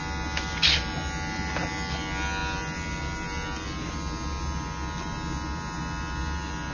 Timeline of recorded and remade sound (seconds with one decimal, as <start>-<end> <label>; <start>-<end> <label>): 0.0-6.7 recorded